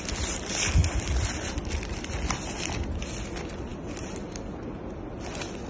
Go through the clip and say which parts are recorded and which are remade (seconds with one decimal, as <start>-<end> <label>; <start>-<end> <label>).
0.0-5.7 recorded